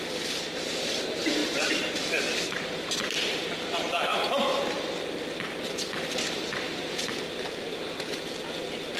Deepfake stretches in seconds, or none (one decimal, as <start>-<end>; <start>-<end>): 1.4-2.9; 4.1-6.9